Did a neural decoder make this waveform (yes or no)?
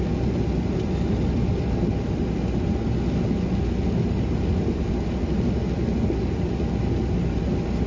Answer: no